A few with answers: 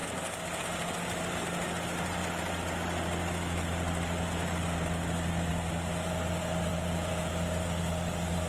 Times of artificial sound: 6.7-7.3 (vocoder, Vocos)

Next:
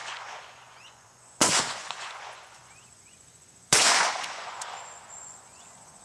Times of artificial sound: 0.0-6.0 (vocoder, Vocos)